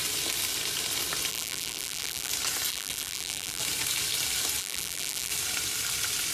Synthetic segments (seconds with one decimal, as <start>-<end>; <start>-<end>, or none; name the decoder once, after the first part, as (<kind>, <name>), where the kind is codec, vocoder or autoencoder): 1.3-2.3 (vocoder, BigVGAN v2); 2.7-3.6; 4.6-5.3